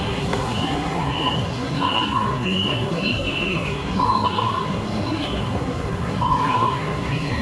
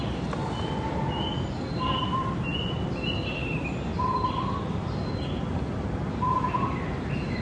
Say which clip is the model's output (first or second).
first